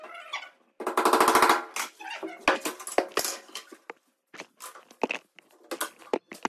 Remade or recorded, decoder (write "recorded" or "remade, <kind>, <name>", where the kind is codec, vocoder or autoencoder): recorded